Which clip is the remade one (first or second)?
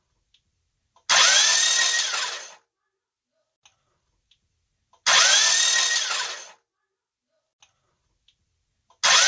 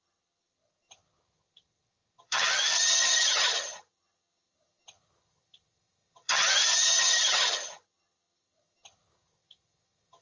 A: second